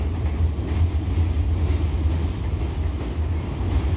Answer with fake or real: real